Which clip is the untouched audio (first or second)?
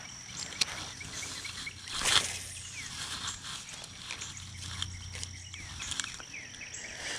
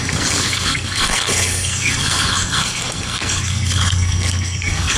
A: first